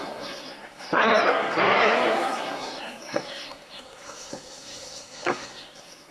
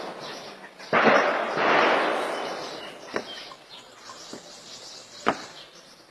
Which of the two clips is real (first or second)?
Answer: second